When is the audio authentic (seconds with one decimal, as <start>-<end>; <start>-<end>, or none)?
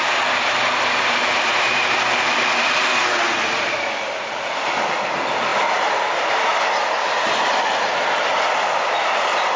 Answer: 0.0-9.6